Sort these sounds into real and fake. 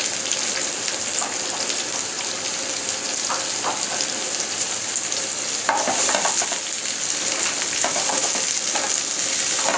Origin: real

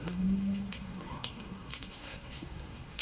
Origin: fake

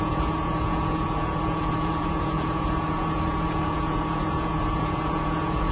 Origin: fake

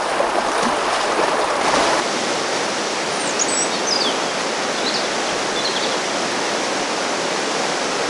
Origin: real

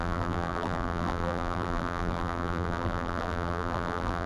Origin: fake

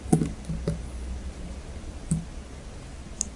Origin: real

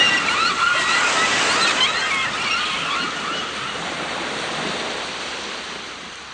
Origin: real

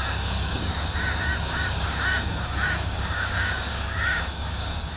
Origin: fake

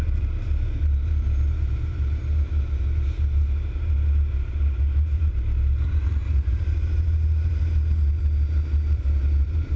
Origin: fake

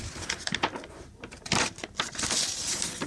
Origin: real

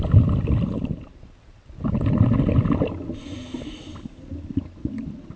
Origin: real